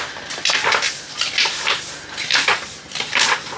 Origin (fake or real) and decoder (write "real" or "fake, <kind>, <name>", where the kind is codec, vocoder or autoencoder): real